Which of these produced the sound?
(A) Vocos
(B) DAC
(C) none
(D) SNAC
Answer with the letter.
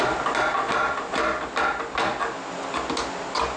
C